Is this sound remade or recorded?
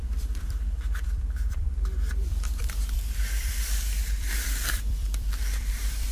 remade